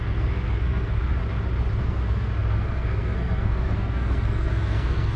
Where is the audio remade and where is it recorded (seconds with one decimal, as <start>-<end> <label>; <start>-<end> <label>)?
0.0-1.2 remade; 1.2-1.8 recorded; 1.8-5.2 remade